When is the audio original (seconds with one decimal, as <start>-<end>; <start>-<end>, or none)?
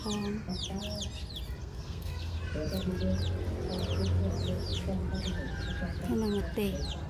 0.0-1.6; 2.4-7.1